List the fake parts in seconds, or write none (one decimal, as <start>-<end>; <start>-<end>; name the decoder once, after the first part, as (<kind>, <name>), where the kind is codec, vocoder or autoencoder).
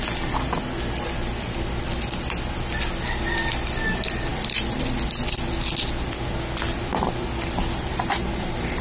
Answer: none